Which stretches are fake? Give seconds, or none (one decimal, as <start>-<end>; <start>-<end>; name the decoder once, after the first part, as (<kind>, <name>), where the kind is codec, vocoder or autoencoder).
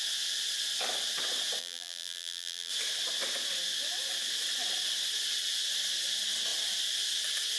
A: 1.6-2.7 (vocoder, BigVGAN v2)